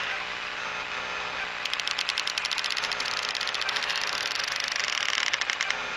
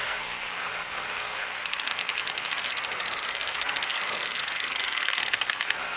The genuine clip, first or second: first